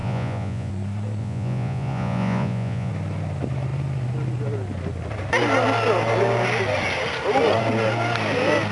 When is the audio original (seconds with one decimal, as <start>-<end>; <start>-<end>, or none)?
0.7-1.2; 2.9-8.7